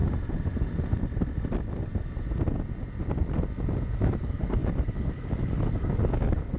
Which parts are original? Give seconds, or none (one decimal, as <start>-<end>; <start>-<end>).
0.0-4.0